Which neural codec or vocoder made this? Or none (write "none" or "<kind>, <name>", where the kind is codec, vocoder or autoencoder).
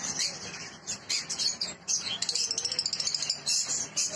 none